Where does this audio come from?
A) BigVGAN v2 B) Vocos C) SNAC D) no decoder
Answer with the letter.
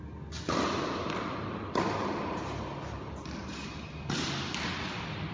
D